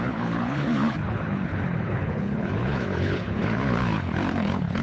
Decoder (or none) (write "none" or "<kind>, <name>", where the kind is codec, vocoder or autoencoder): codec, HILCodec